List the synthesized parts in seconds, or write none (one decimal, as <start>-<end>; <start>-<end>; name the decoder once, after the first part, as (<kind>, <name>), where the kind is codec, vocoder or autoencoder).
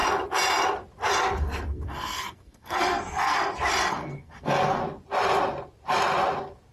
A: 1.2-3.4 (codec, SNAC); 3.9-4.8